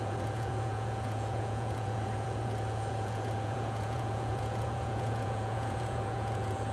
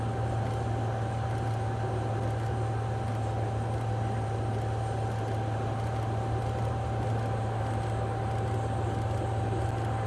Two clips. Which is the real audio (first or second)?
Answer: second